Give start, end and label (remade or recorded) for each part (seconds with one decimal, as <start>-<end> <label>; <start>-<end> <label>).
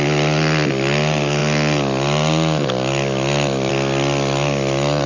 0.0-5.1 recorded